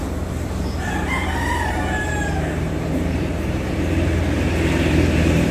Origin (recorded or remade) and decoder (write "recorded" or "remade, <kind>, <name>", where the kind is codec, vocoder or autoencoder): remade, vocoder, BigVGAN v2